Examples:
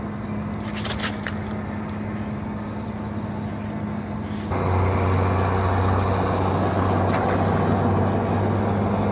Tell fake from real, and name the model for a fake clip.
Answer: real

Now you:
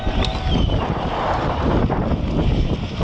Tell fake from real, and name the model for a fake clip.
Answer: real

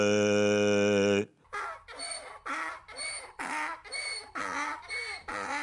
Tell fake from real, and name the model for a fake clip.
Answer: real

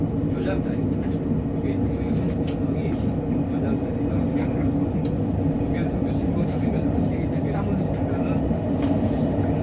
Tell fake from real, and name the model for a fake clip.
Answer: real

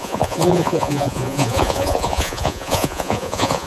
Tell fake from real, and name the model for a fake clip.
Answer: fake, vocoder, Vocos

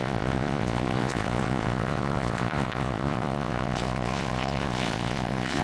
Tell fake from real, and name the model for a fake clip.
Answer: fake, vocoder, Vocos